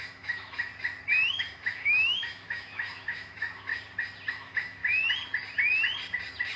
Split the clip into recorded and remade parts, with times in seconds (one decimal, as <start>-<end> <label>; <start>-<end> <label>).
0.0-0.7 remade; 0.7-1.3 recorded; 1.3-3.7 remade; 3.7-4.3 recorded; 4.3-4.8 remade; 4.8-6.6 recorded